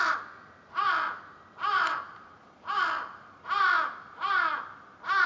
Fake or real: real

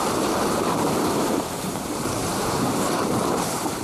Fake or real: fake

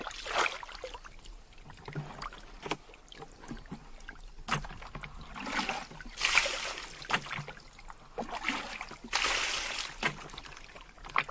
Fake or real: real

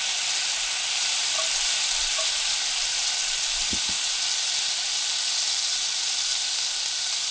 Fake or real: real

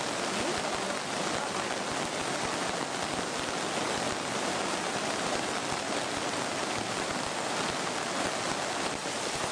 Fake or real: real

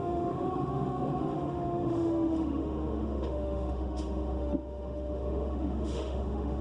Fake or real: fake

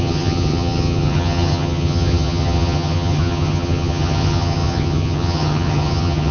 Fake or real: fake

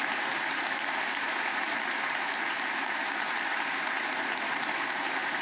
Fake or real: fake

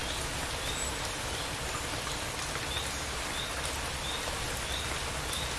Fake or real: real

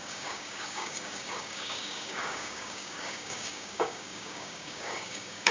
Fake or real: fake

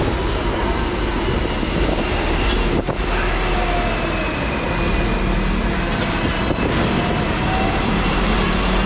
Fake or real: real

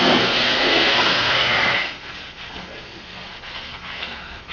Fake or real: fake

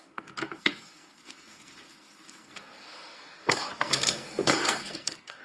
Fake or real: fake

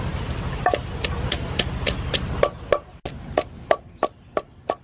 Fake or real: real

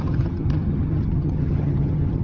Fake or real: fake